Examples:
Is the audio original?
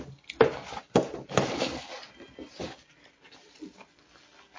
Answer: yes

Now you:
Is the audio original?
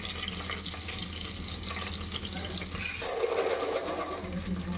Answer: yes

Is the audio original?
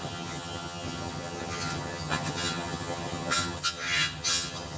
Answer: no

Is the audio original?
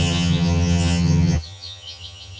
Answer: no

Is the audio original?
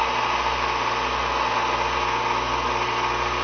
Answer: yes